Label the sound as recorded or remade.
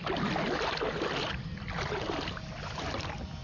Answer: recorded